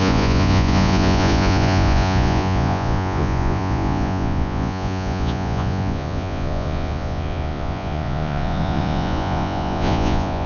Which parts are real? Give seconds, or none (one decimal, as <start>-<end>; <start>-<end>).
none